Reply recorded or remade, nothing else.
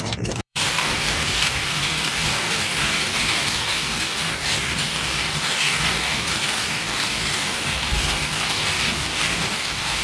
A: remade